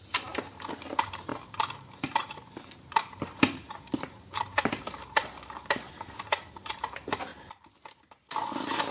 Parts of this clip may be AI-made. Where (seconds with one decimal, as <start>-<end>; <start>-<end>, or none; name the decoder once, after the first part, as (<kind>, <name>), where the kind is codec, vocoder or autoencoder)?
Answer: 0.0-7.3 (vocoder, BigVGAN v2)